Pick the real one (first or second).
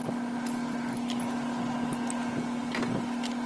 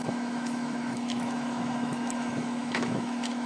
first